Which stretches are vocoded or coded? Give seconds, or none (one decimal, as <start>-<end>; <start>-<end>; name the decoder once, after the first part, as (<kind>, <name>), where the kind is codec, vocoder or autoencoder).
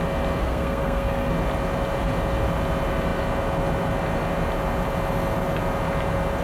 0.4-1.3 (codec, SNAC)